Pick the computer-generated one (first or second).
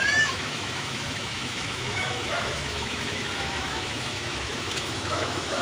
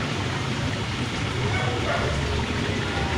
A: first